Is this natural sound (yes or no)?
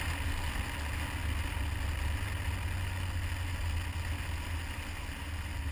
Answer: yes